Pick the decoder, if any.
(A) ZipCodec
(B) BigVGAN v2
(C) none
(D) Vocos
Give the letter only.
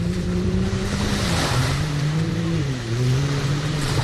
B